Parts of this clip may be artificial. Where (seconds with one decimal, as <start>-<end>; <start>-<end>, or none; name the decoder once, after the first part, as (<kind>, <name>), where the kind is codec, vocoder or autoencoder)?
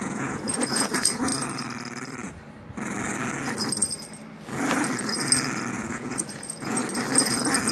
0.0-1.3 (vocoder, Vocos); 5.7-6.8